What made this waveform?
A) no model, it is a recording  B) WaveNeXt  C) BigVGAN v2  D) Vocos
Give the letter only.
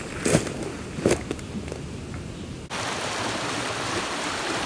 A